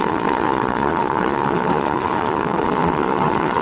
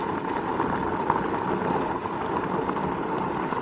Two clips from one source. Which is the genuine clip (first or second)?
second